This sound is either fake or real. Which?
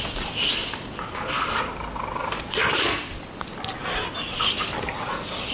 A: real